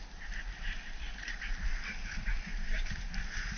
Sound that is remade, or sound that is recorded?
recorded